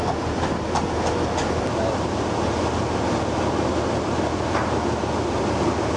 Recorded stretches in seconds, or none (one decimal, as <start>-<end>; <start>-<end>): 0.0-6.0

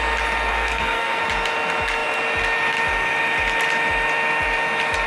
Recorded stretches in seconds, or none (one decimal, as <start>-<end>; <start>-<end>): 0.0-0.5; 1.2-5.1

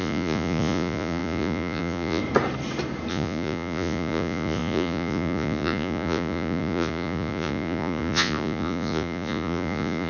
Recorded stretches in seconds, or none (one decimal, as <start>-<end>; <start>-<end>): 2.2-3.1

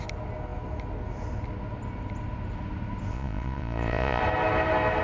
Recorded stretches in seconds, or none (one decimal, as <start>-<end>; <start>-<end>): 0.0-3.1; 4.2-5.0